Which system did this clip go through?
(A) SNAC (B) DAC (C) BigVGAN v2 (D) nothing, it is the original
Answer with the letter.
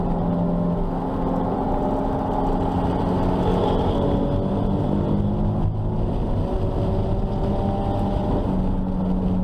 D